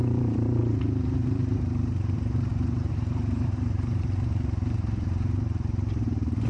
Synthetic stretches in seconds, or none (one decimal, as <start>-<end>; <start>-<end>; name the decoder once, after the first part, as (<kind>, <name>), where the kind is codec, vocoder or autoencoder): 0.0-0.6 (vocoder, BigVGAN v2); 1.1-6.5